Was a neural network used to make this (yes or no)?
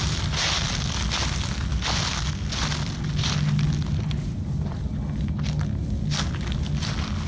no